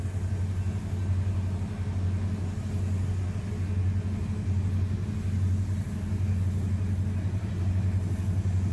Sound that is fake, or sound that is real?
real